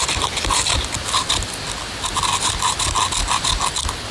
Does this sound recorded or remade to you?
recorded